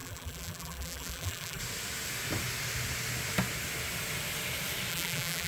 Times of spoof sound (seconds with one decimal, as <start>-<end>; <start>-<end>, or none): 0.0-1.6; 4.9-5.5